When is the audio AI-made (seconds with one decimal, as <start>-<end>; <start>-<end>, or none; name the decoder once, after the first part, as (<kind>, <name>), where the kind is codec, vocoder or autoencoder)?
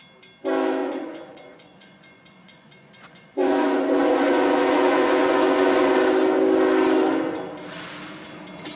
0.8-5.9 (vocoder, Vocos)